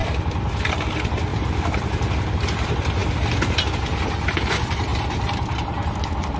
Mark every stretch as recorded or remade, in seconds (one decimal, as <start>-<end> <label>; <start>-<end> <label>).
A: 0.0-1.3 recorded; 1.3-2.1 remade; 2.1-4.9 recorded; 4.9-5.9 remade; 5.9-6.4 recorded